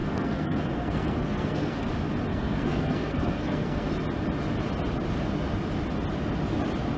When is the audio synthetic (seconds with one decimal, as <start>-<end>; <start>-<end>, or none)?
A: 0.0-1.9; 2.3-3.9